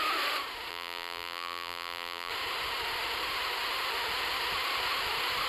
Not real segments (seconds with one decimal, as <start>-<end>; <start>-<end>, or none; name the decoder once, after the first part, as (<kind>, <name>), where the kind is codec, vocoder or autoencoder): 0.7-2.3 (vocoder, BigVGAN v2)